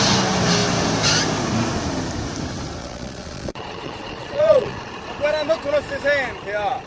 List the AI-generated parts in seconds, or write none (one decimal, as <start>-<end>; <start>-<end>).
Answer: 2.8-4.9